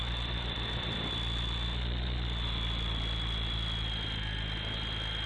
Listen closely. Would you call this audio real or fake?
real